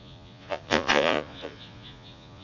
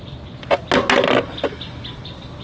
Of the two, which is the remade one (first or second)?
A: first